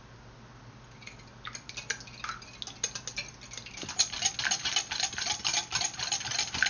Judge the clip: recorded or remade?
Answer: recorded